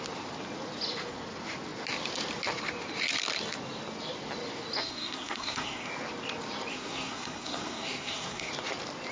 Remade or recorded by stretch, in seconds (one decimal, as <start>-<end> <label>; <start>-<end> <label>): 0.0-4.8 recorded; 4.8-5.9 remade; 5.9-6.7 recorded; 6.7-8.5 remade; 8.5-9.1 recorded